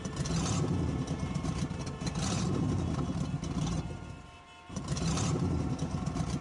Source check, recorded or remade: remade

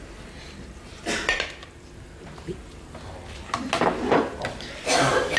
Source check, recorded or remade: recorded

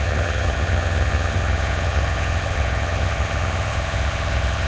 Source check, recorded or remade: remade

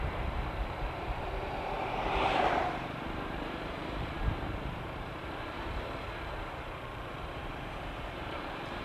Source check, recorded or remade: remade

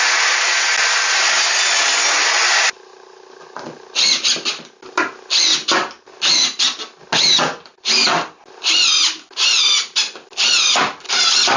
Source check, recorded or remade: recorded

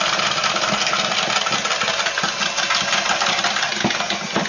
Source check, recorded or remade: recorded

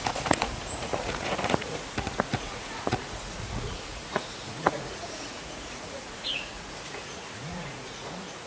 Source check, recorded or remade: remade